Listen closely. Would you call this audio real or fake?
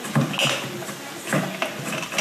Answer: real